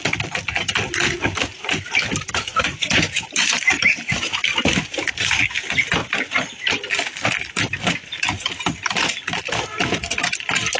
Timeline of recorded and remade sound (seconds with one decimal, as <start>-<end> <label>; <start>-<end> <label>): 0.0-2.5 recorded; 2.5-5.4 remade; 5.4-7.8 recorded; 7.8-8.9 remade; 8.9-10.8 recorded